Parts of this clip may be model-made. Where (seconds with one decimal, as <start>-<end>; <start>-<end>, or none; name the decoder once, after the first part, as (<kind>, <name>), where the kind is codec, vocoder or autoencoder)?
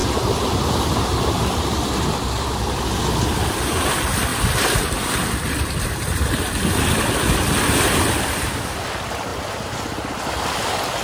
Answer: 1.0-11.0 (vocoder, BigVGAN v2)